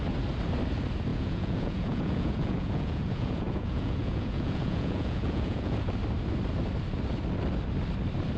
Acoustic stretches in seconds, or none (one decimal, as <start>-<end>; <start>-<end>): 0.0-1.1; 5.9-8.4